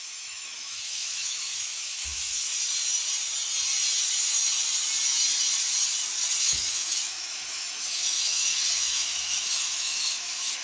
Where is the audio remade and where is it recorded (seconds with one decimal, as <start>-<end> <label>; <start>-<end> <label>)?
0.0-2.5 remade; 2.5-6.4 recorded; 6.4-10.6 remade